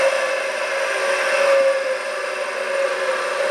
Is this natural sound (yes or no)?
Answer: yes